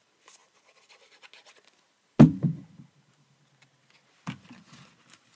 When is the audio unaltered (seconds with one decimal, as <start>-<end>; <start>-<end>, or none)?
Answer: 0.0-5.4